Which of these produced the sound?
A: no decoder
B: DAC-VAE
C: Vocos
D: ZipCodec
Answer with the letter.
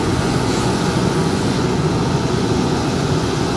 C